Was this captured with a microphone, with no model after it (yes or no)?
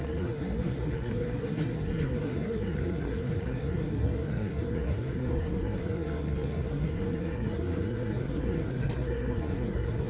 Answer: no